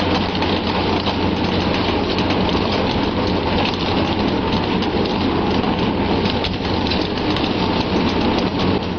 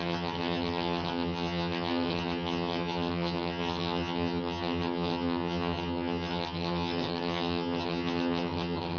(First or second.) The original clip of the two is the first